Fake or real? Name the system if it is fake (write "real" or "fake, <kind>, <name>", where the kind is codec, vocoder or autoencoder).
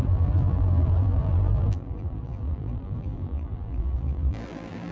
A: fake, vocoder, BigVGAN v2